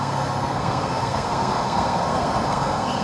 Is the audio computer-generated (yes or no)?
yes